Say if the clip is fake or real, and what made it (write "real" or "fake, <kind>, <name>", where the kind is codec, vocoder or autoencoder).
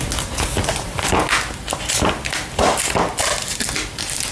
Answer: real